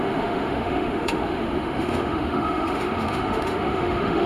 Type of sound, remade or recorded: remade